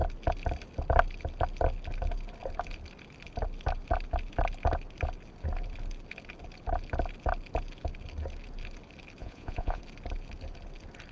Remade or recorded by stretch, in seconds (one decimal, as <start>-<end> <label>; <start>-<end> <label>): 0.0-9.2 recorded; 9.2-9.8 remade; 9.8-11.1 recorded